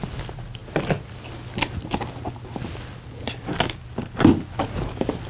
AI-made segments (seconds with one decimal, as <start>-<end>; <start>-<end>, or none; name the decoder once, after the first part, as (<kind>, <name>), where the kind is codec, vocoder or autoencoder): none